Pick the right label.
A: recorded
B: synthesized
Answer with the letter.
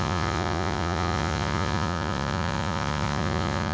B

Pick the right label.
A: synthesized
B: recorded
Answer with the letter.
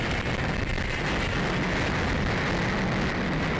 B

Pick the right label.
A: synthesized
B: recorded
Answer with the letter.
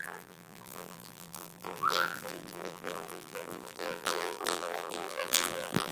A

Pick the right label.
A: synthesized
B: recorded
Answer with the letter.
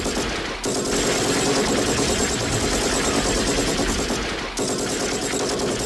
B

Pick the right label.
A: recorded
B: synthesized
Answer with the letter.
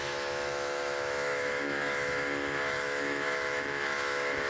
B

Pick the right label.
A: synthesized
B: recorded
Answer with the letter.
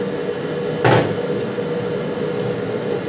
B